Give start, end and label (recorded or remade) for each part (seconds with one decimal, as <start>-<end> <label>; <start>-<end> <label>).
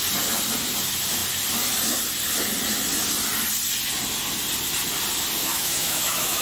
0.0-5.4 recorded; 5.4-6.4 remade